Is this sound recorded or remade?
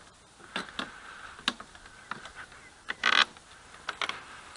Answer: recorded